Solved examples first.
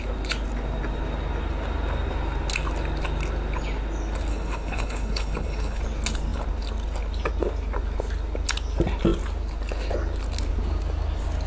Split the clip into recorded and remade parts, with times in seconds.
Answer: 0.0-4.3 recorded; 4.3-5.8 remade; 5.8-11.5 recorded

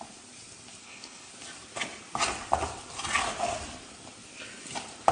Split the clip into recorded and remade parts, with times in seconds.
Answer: 0.0-0.8 recorded; 0.8-1.3 remade; 1.3-5.1 recorded

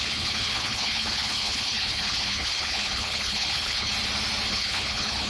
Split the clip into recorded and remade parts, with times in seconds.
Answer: 0.0-3.9 remade; 3.9-4.5 recorded; 4.5-5.3 remade

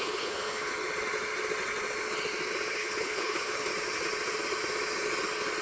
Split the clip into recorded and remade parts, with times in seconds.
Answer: 0.0-0.7 remade; 0.7-2.7 recorded; 2.7-3.7 remade; 3.7-5.6 recorded

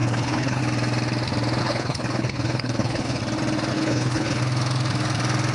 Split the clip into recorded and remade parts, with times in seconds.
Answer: 0.0-0.6 remade; 0.6-1.6 recorded; 1.6-3.2 remade; 3.2-3.7 recorded; 3.7-4.4 remade; 4.4-5.5 recorded

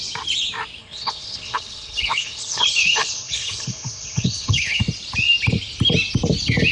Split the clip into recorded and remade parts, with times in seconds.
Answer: 0.0-0.8 recorded; 0.8-4.8 remade; 4.8-6.7 recorded

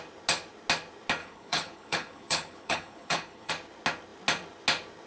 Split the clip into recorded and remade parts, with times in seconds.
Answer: 0.0-1.2 recorded; 1.2-3.5 remade; 3.5-5.1 recorded

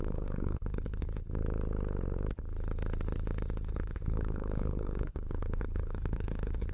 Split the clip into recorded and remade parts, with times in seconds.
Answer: 0.0-1.1 remade; 1.1-3.7 recorded; 3.7-6.7 remade